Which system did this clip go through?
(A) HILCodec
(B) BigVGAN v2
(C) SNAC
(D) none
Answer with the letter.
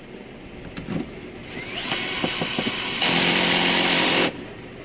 B